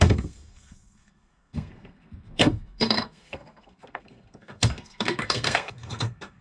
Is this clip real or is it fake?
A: fake